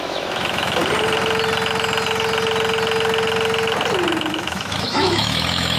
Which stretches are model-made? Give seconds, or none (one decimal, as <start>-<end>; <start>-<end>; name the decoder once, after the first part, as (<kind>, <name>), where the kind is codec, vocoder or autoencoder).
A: 0.0-0.8 (autoencoder, DAC-VAE); 4.3-5.8